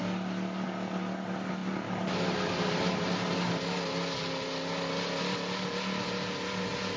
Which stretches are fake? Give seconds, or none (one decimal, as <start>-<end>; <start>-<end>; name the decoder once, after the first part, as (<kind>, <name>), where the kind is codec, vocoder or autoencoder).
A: none